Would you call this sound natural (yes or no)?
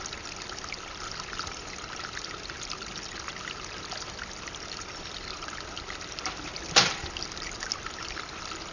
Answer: yes